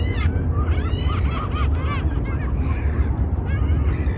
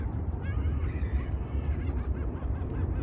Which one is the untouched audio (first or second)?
first